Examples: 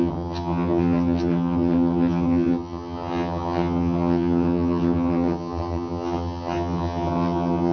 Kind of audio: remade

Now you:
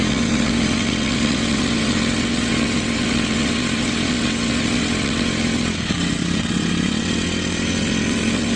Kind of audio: remade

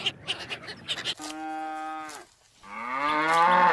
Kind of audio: recorded